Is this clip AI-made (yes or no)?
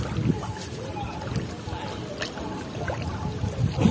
no